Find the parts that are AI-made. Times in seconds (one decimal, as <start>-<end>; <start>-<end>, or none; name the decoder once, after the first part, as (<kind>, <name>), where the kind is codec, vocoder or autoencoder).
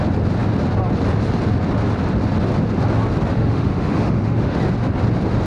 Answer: 3.3-4.6 (autoencoder, DAC-VAE)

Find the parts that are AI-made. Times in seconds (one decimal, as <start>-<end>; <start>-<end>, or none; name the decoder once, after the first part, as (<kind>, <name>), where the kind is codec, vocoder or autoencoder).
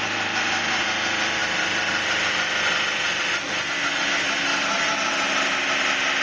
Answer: none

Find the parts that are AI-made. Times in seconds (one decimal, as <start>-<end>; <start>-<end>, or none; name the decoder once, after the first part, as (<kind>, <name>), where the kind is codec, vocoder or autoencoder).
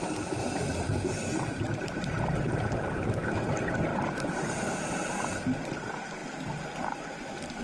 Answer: 0.4-3.5 (vocoder, BigVGAN v2); 3.9-4.7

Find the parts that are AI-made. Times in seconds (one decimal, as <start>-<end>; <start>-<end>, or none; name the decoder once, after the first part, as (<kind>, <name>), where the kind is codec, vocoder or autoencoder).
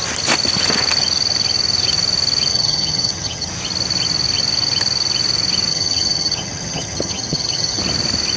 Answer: 2.5-3.5 (vocoder, HiFi-GAN); 5.7-7.8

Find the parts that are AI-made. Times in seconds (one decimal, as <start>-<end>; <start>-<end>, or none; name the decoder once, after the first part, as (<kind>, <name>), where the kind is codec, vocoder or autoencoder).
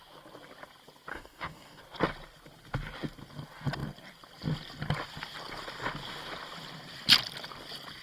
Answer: 1.1-1.8 (codec, DAC)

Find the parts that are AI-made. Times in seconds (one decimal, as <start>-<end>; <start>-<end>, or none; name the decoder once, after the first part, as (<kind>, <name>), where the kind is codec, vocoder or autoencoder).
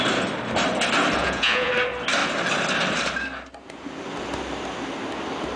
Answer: 1.2-1.7 (vocoder, Vocos)